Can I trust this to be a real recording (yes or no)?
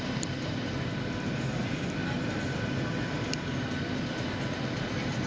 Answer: yes